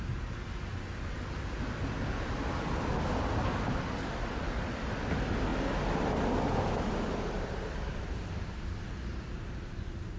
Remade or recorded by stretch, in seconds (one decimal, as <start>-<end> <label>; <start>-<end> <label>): 0.0-3.4 recorded; 3.4-5.5 remade; 5.5-7.7 recorded; 7.7-10.2 remade